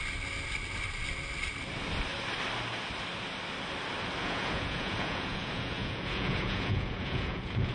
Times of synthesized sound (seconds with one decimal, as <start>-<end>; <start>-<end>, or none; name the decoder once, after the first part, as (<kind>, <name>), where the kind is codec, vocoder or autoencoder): 4.2-7.7 (vocoder, Vocos)